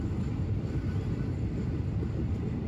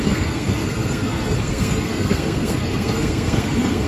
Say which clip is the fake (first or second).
second